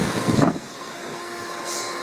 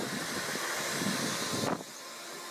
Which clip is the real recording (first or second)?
second